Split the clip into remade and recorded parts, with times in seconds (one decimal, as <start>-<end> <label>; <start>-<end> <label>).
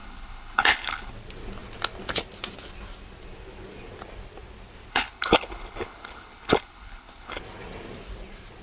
0.0-1.1 remade; 1.1-4.9 recorded; 4.9-7.4 remade; 7.4-8.6 recorded